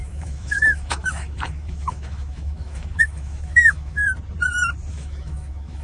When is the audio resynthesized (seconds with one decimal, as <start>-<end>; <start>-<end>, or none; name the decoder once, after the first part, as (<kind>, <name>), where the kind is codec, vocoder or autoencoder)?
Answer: 0.0-4.0 (autoencoder, DAC-VAE); 4.9-5.8